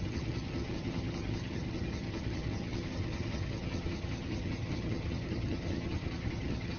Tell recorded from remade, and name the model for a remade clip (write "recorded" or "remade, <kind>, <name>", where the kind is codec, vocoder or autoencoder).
remade, vocoder, HiFi-GAN